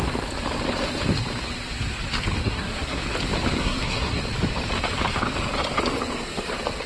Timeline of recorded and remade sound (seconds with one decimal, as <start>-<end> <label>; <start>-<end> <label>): 0.0-2.4 recorded; 2.4-3.0 remade; 3.0-3.6 recorded; 3.6-4.2 remade; 4.2-6.9 recorded